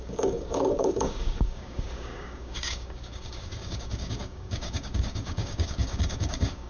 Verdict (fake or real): fake